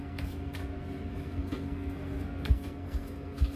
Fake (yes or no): yes